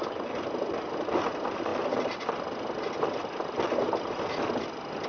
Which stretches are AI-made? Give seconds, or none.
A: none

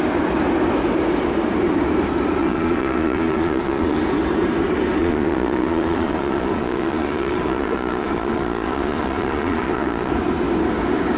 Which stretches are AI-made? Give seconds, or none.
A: 2.4-4.0 (vocoder, Vocos); 5.0-10.1

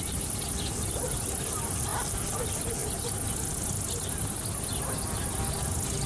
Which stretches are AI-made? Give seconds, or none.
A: none

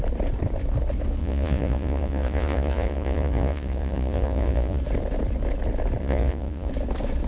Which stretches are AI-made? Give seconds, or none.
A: 1.2-4.8 (vocoder, Vocos); 6.0-6.7

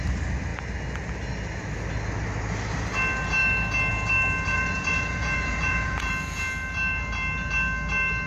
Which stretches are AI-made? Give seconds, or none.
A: 4.5-6.1 (vocoder, Vocos)

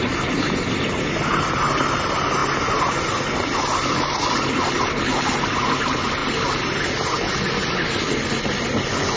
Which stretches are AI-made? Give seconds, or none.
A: none

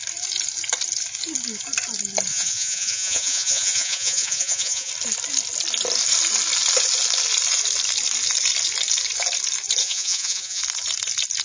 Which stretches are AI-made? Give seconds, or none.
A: 2.3-4.9 (vocoder, Vocos); 9.8-10.6

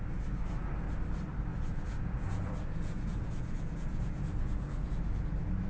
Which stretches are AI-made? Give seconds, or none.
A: 1.5-4.9 (vocoder, Vocos)